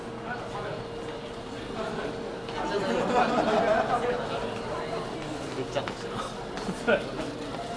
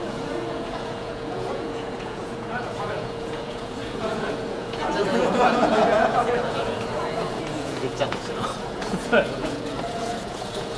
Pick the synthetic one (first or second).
second